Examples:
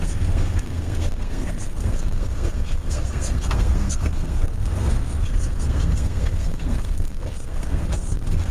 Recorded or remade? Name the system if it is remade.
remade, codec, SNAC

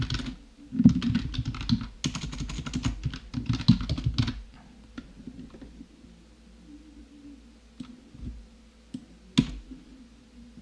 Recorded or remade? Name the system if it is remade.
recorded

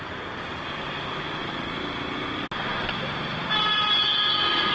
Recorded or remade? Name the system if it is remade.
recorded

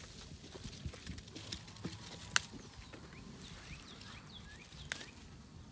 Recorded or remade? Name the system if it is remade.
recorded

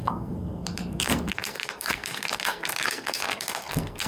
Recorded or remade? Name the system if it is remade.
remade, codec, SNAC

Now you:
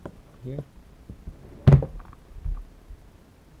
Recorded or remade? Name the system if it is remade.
recorded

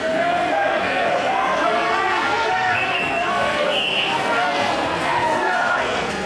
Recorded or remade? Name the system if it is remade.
remade, codec, SNAC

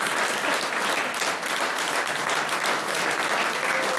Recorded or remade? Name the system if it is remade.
recorded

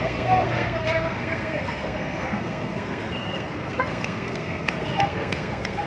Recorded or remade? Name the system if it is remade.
remade, codec, SNAC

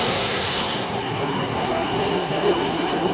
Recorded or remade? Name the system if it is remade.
remade, codec, SNAC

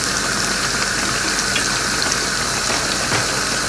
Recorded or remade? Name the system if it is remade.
recorded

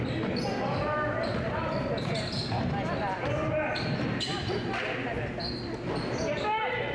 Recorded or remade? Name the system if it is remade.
recorded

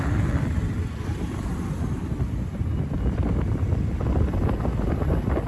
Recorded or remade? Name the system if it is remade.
recorded